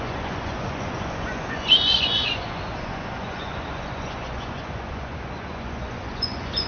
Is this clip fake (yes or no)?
yes